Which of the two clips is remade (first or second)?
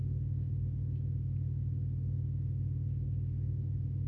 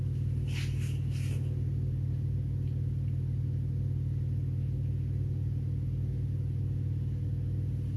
first